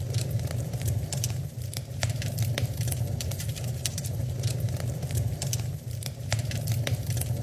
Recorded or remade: remade